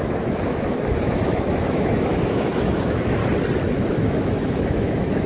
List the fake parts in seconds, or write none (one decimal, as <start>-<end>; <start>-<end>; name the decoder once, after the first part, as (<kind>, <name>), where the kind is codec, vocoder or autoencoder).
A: 0.0-3.2 (autoencoder, DAC-VAE); 3.7-5.3